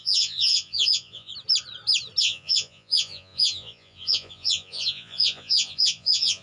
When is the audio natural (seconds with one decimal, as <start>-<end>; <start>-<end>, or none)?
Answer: 1.3-2.2